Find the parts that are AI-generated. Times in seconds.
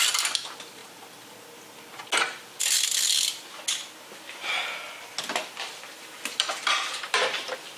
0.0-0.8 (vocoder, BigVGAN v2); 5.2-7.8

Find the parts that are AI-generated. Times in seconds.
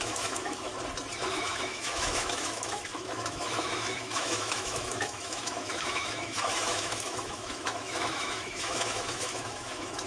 0.0-0.7 (autoencoder, DAC-VAE); 1.3-10.1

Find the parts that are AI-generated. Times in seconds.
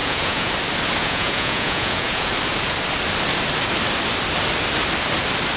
0.0-0.5 (vocoder, Vocos); 1.0-2.3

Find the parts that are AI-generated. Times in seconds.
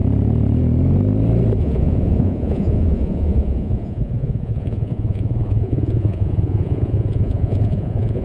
1.6-8.2 (vocoder, Vocos)